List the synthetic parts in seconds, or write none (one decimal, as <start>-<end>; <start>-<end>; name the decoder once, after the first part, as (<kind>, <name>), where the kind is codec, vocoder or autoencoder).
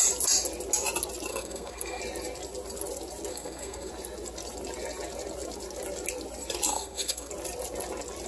1.3-2.0 (codec, SNAC); 3.3-3.9; 6.7-7.3